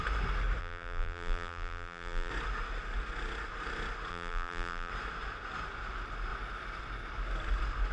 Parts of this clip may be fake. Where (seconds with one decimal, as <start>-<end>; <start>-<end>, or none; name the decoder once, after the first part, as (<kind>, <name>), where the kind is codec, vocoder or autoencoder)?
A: 0.6-2.3 (vocoder, BigVGAN v2); 4.1-4.9